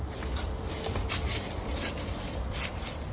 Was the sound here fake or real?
real